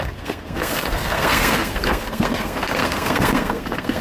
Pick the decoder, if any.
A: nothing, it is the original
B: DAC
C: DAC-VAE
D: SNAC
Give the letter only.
D